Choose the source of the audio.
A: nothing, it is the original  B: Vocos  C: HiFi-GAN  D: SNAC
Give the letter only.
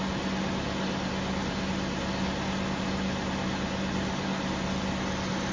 A